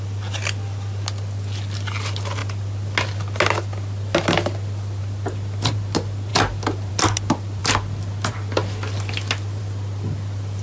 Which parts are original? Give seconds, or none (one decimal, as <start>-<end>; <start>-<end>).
0.0-10.6